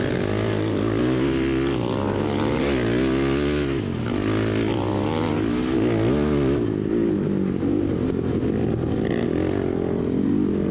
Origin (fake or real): real